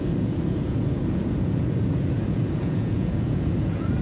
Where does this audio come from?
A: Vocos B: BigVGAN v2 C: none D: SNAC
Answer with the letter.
A